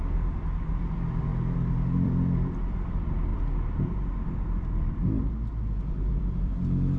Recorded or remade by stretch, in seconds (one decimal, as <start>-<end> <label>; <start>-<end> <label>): 0.0-3.3 remade; 3.3-3.8 recorded; 3.8-5.2 remade; 5.2-6.1 recorded; 6.1-7.0 remade